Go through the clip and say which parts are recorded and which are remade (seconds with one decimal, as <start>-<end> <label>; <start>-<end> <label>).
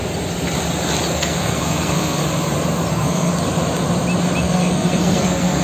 0.0-1.1 recorded; 1.1-2.2 remade; 2.2-2.9 recorded; 2.9-3.3 remade; 3.3-4.4 recorded; 4.4-5.6 remade